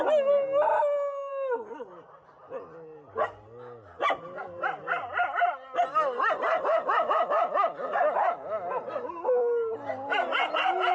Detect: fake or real real